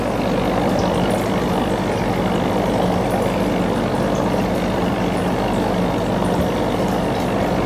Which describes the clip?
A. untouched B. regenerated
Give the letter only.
A